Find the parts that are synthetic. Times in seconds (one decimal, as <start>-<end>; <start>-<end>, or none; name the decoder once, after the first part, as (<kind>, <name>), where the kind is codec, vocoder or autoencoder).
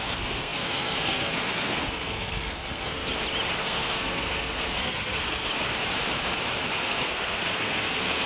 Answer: 0.0-3.0 (codec, SNAC); 3.6-5.5; 6.8-8.3